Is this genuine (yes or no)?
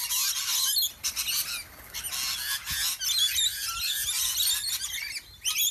yes